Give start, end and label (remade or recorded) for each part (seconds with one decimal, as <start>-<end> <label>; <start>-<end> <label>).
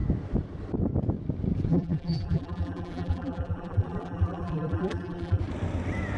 0.0-1.7 recorded; 1.7-5.4 remade; 5.4-6.2 recorded